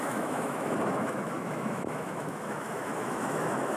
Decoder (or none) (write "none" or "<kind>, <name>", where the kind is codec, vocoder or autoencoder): autoencoder, DAC-VAE